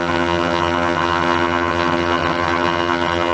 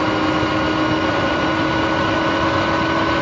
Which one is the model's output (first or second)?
first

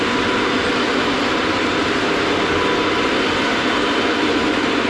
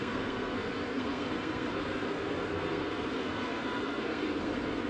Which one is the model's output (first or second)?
second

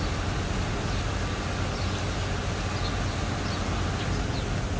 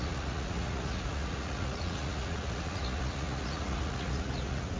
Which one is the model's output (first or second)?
second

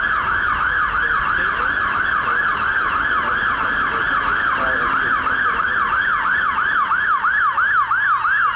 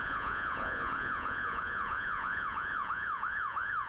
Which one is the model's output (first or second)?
second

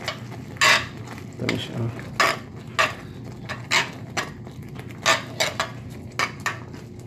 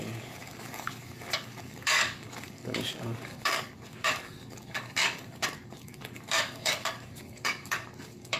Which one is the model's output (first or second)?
second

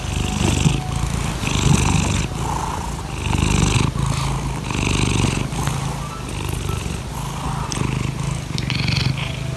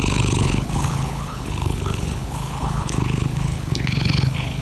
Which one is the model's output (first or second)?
second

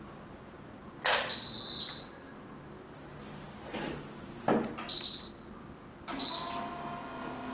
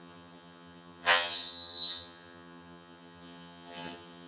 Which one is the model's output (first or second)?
second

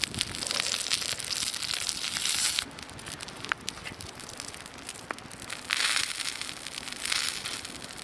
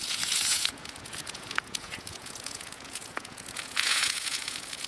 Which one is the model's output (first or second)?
second